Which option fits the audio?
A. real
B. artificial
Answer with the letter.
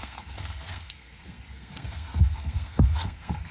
B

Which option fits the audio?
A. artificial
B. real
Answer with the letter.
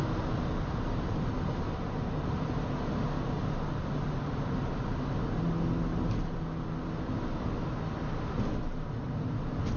B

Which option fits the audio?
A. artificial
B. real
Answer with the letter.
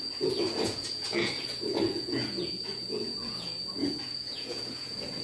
A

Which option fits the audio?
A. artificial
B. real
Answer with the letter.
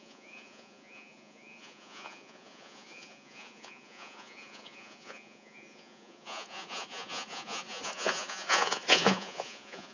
A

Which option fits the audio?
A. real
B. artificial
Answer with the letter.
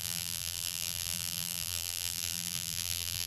B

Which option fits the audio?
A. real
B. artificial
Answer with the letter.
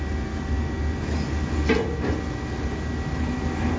A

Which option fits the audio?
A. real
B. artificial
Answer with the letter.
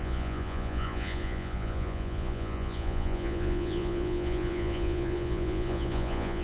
B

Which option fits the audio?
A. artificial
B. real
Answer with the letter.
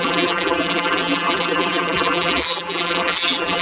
A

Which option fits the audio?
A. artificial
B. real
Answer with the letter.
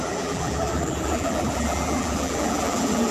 A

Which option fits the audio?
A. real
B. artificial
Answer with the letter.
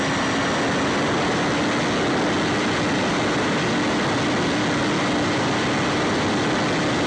A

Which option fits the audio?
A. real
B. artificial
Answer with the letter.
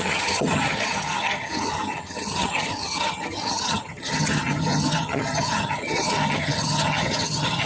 B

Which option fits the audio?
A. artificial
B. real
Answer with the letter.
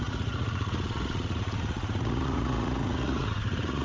A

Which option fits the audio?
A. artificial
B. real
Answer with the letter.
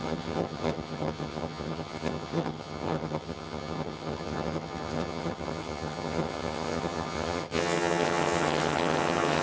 A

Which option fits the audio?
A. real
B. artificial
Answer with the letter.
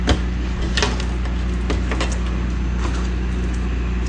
A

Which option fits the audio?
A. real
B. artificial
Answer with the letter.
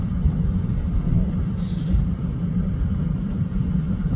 B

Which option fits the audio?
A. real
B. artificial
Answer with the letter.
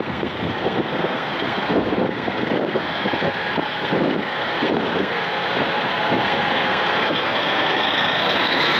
B